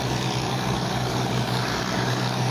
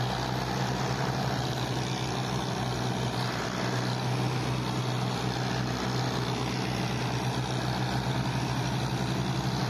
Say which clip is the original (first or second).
second